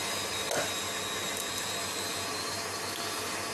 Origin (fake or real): real